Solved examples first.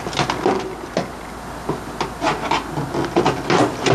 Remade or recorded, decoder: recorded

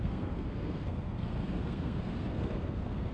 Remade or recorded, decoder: remade, codec, SNAC